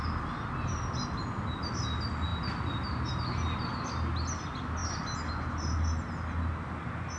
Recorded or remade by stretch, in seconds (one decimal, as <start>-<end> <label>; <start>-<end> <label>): 0.0-7.2 recorded

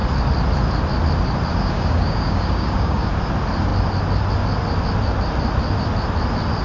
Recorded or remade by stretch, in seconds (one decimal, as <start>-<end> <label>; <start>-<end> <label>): 0.0-1.5 recorded; 1.5-3.1 remade; 3.1-6.6 recorded

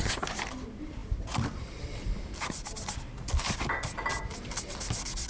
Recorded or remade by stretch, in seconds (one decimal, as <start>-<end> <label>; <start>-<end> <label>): 0.0-5.3 recorded

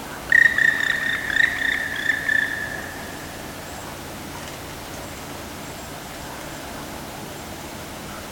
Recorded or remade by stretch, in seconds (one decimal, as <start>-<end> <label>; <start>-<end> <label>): 0.0-8.3 recorded

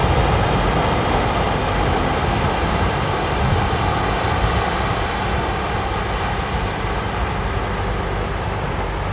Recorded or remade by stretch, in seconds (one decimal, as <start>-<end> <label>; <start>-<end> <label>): 0.0-9.1 recorded

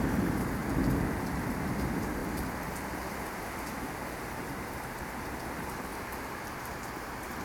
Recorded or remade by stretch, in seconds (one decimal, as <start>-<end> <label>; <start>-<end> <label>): 0.0-0.6 remade; 0.6-1.5 recorded; 1.5-5.9 remade; 5.9-6.6 recorded; 6.6-7.4 remade

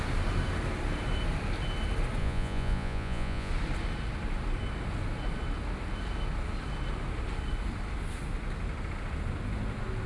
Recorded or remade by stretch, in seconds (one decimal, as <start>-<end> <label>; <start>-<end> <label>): 0.0-2.2 recorded; 2.2-3.5 remade; 3.5-10.1 recorded